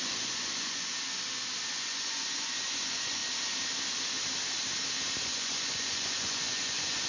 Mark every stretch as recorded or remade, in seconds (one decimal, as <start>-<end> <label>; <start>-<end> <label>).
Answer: 0.0-0.9 remade; 0.9-1.7 recorded; 1.7-3.2 remade; 3.2-5.2 recorded; 5.2-7.1 remade